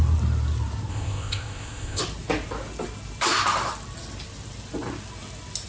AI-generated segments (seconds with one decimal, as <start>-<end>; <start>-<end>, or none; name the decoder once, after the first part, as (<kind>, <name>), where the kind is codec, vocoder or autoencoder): 0.9-2.0 (codec, ZipCodec)